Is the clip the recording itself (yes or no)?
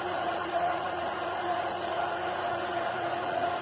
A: no